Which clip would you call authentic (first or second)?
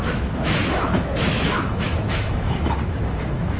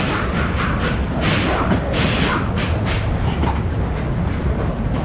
second